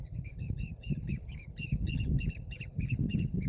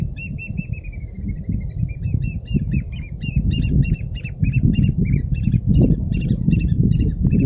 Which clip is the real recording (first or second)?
second